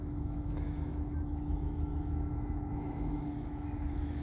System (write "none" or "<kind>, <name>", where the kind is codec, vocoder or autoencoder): autoencoder, DAC-VAE